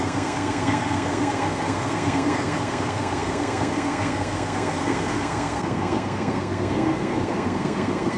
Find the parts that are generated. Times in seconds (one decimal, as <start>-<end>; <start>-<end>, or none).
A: 0.0-8.2

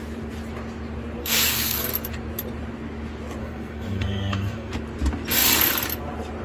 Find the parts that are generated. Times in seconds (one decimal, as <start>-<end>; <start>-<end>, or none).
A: 1.2-1.9; 3.4-4.7

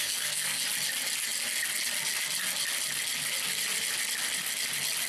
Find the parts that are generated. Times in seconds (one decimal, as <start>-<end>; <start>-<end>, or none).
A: 0.0-0.6

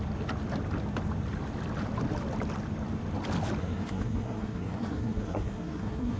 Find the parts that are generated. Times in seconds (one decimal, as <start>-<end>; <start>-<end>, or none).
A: 3.6-6.2

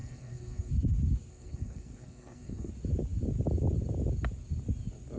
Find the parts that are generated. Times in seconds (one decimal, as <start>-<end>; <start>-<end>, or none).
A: 0.0-0.7; 1.3-2.7

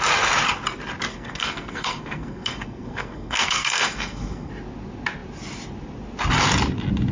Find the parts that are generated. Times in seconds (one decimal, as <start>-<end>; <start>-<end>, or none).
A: 1.1-4.5

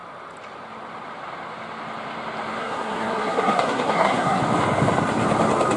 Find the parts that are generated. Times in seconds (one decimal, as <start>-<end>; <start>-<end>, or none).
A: 2.6-4.4